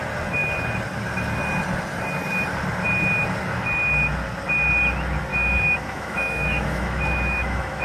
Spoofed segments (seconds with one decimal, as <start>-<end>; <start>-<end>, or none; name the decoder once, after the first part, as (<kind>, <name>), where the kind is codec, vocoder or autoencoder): 5.3-7.8 (autoencoder, DAC-VAE)